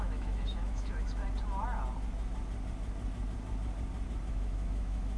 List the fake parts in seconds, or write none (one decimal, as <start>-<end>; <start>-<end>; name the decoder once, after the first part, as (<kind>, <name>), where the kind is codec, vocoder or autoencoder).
0.0-1.2 (autoencoder, DAC-VAE); 4.3-5.2